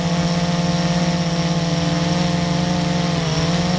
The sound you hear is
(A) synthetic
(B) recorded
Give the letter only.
B